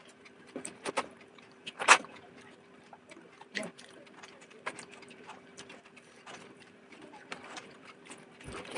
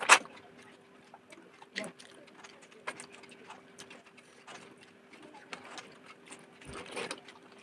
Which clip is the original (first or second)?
second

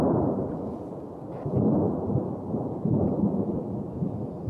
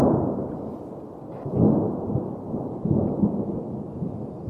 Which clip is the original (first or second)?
second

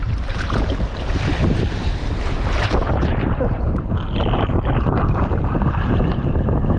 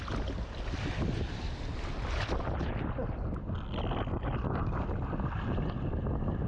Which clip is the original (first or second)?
second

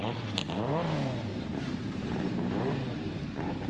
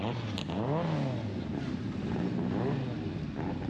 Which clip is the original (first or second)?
second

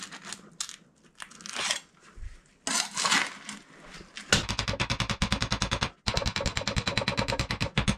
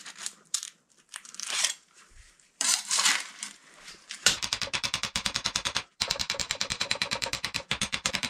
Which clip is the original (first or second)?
first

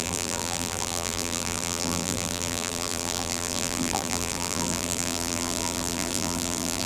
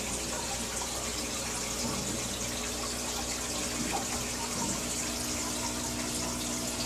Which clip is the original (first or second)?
second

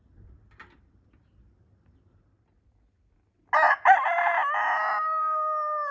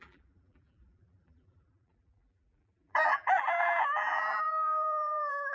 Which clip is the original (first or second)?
first